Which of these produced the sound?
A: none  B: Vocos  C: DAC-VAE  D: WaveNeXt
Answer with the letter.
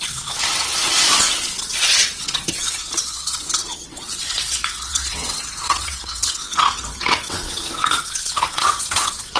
D